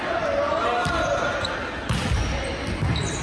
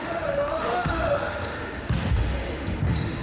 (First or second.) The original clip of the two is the first